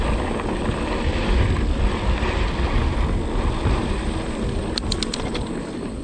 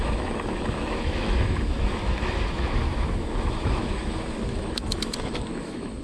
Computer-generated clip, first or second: second